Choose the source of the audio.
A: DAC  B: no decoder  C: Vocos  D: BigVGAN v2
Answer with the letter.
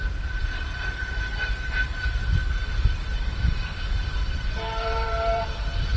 D